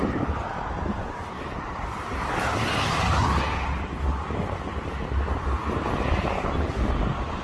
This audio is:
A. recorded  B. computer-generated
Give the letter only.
A